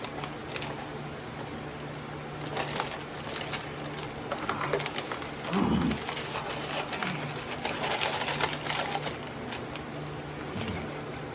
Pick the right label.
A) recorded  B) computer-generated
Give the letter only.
A